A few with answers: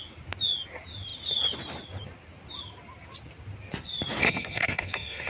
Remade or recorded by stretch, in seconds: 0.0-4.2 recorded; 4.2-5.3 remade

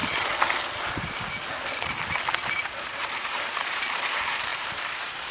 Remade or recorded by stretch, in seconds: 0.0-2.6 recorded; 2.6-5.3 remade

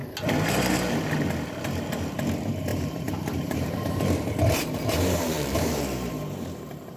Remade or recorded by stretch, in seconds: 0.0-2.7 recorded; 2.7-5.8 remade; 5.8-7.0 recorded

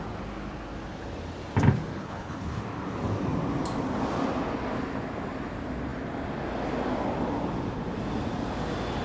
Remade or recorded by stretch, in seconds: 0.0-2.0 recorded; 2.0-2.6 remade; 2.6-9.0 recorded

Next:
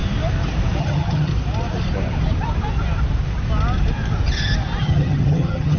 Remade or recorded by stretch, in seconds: 0.0-0.8 recorded; 0.8-1.3 remade; 1.3-4.8 recorded; 4.8-5.8 remade